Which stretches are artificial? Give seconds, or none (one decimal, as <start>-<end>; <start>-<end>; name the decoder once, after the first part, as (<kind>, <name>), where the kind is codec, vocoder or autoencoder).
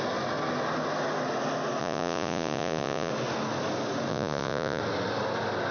1.8-3.1 (vocoder, Vocos); 4.1-4.8